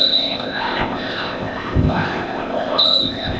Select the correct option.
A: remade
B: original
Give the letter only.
A